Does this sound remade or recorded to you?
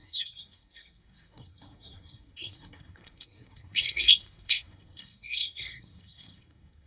remade